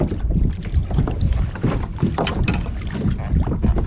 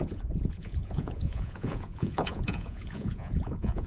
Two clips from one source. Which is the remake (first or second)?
second